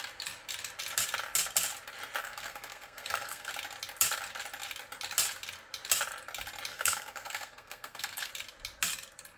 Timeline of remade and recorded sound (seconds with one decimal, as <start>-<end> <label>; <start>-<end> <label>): 0.0-2.2 recorded; 2.2-3.5 remade; 3.5-6.7 recorded; 6.7-8.3 remade; 8.3-9.4 recorded